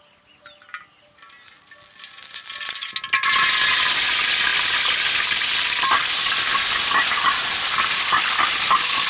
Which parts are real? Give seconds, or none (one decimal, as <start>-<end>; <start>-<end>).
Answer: 0.0-9.1

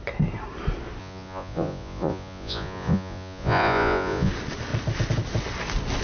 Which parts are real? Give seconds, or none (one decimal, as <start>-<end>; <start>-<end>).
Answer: 0.0-1.0; 4.3-6.0